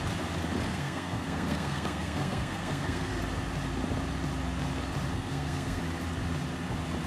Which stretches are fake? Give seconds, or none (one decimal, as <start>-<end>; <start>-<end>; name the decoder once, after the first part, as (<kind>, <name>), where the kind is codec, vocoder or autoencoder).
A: 0.7-3.1 (codec, SNAC); 5.1-5.8